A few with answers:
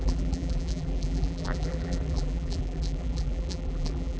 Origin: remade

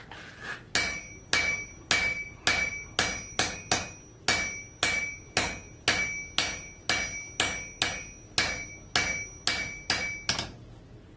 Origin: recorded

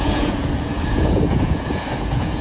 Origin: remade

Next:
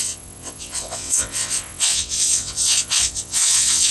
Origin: remade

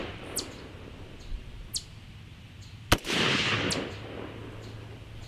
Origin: recorded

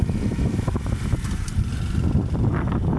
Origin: recorded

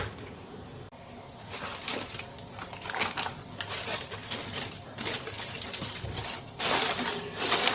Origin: remade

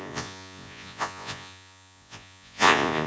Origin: remade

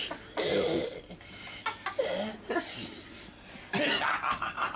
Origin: recorded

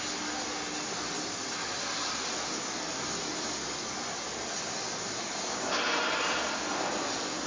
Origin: recorded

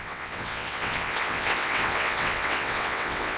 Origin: remade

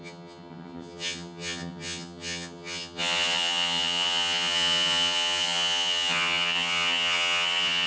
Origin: remade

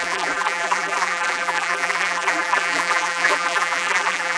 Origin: remade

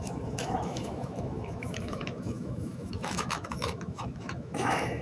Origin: remade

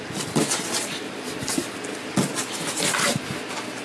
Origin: recorded